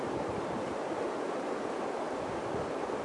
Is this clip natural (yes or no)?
yes